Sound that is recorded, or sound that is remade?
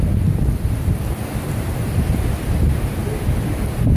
recorded